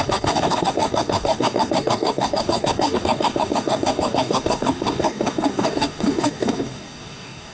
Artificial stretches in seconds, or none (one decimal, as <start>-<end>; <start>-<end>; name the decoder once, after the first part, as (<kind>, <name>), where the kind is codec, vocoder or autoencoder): 0.0-7.5 (codec, DAC)